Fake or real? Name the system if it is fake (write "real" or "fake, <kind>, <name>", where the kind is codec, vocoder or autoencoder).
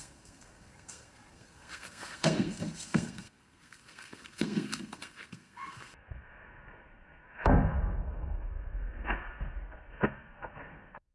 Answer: fake, codec, SNAC